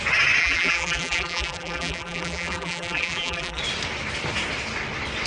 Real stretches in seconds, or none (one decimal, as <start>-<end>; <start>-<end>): 0.0-0.4; 3.6-5.3